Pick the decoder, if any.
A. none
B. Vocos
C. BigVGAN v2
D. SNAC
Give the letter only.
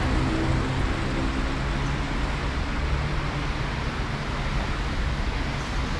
A